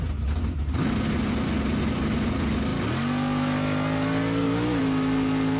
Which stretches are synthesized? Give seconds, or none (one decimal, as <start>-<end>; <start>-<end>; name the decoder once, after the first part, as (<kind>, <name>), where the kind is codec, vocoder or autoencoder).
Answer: none